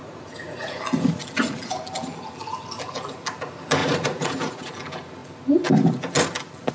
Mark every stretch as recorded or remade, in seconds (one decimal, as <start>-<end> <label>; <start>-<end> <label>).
0.0-0.8 remade; 0.8-3.8 recorded; 3.8-4.7 remade; 4.7-6.7 recorded